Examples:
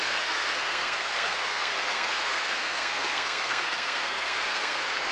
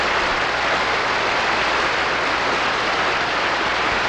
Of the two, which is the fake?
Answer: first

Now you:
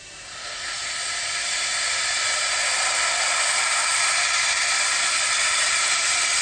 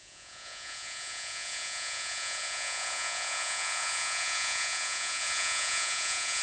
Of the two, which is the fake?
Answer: second